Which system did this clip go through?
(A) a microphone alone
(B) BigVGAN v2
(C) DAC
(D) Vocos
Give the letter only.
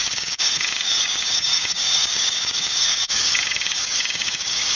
C